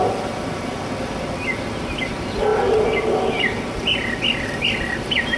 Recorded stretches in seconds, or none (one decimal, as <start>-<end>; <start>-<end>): 0.0-5.4